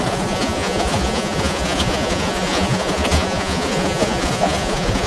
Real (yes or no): no